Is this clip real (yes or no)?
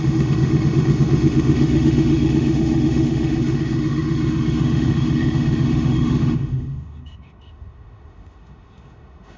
no